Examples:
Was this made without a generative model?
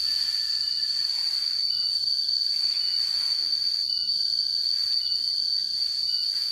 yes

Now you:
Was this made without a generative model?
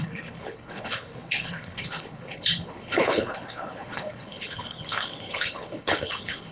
no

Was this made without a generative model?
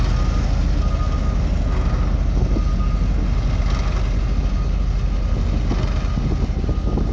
yes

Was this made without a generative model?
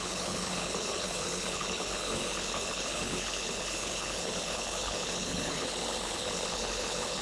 no